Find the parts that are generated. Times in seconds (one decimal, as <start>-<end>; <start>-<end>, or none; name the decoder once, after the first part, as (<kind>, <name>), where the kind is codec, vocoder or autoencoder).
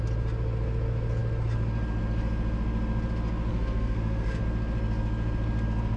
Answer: 3.5-4.4 (codec, SNAC)